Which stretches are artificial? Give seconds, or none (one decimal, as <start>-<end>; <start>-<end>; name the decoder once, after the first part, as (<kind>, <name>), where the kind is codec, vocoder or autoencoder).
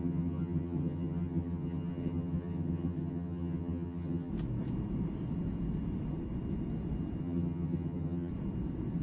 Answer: 0.0-4.3 (vocoder, HiFi-GAN); 7.2-8.3